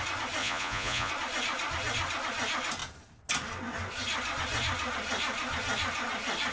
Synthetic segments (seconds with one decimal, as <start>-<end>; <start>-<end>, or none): 0.4-1.1